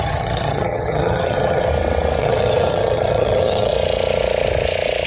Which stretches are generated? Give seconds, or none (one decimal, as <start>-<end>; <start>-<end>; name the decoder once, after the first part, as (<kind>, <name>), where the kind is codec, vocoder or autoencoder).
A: 0.0-1.7 (vocoder, HiFi-GAN); 2.2-3.7